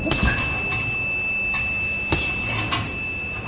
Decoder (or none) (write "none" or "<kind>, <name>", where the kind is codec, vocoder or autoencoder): none